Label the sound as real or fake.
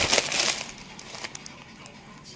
real